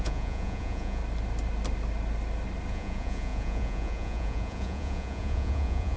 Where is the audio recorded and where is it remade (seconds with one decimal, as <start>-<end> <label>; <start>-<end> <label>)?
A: 0.0-1.0 remade; 1.0-2.7 recorded; 2.7-6.0 remade